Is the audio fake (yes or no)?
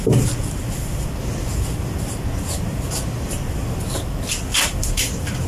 no